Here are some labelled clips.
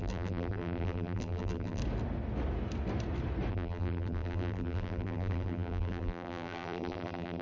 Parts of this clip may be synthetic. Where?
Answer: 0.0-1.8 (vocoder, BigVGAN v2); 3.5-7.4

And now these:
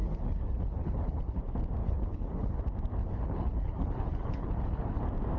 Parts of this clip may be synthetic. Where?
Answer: 0.0-1.4 (codec, HILCodec); 1.8-2.6; 3.0-5.0

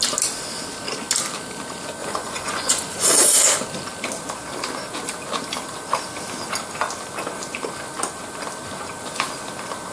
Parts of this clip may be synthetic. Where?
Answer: 2.0-3.1 (vocoder, Vocos)

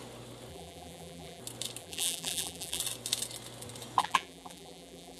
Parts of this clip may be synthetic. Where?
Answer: 0.5-1.4 (vocoder, BigVGAN v2); 1.8-2.8; 4.0-5.2